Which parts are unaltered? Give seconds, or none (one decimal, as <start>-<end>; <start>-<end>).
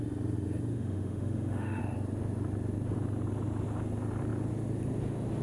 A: 0.0-0.7; 1.8-5.4